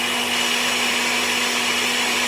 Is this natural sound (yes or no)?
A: yes